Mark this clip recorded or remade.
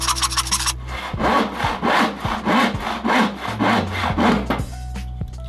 recorded